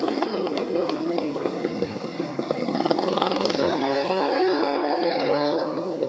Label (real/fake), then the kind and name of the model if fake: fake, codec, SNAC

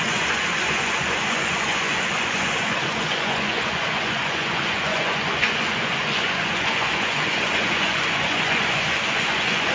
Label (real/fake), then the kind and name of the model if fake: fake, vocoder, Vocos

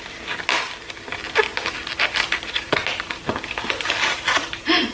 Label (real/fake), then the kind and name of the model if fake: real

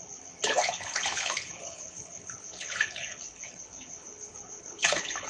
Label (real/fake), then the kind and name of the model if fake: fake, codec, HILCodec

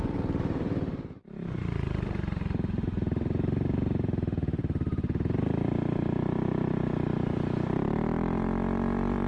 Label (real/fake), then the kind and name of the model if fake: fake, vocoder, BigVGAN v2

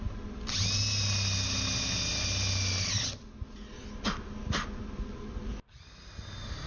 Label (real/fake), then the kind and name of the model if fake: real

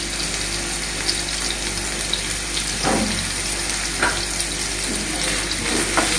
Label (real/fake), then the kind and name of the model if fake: real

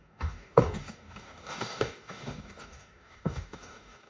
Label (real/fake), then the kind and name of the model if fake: fake, codec, DAC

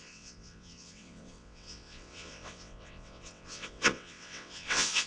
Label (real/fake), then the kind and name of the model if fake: fake, vocoder, WaveNeXt